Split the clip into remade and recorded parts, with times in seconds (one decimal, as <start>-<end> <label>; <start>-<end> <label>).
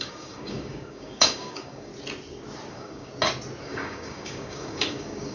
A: 0.0-1.9 remade; 1.9-2.7 recorded; 2.7-3.1 remade; 3.1-3.6 recorded; 3.6-5.3 remade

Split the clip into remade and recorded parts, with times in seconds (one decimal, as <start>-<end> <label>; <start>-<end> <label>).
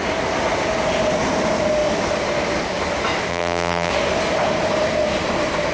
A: 0.0-3.3 recorded; 3.3-3.9 remade; 3.9-5.7 recorded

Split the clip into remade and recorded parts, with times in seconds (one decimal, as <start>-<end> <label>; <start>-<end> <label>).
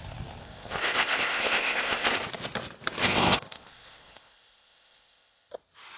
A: 0.0-0.4 recorded; 0.4-2.1 remade; 2.1-3.0 recorded; 3.0-5.5 remade; 5.5-6.0 recorded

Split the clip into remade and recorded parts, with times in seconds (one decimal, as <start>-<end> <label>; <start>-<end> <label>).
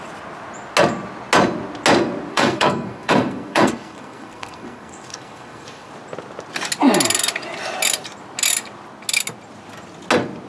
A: 0.0-2.3 recorded; 2.3-5.9 remade; 5.9-10.5 recorded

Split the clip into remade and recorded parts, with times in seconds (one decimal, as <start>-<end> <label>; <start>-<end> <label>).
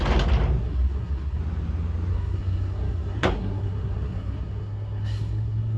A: 0.0-0.6 recorded; 0.6-1.4 remade; 1.4-2.1 recorded; 2.1-5.8 remade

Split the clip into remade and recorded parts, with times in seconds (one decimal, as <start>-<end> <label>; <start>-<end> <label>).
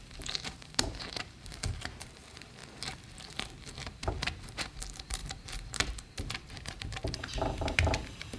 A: 0.0-2.6 remade; 2.6-3.7 recorded; 3.7-8.4 remade